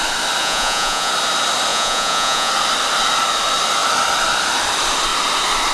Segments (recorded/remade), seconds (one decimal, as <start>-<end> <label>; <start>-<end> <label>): 0.0-0.4 recorded; 0.4-1.1 remade; 1.1-1.7 recorded; 1.7-2.5 remade; 2.5-5.7 recorded